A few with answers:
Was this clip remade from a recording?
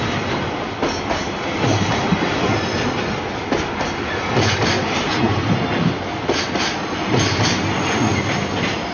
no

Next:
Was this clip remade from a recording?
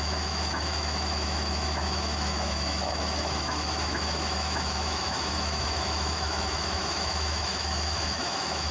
yes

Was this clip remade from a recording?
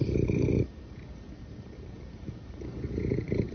yes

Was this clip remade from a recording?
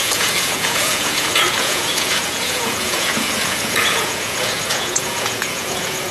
yes